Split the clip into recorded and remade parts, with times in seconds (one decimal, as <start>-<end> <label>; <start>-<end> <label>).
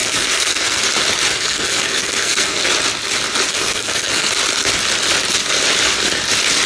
0.0-0.8 remade; 0.8-1.3 recorded; 1.3-2.7 remade; 2.7-3.5 recorded; 3.5-4.3 remade; 4.3-6.7 recorded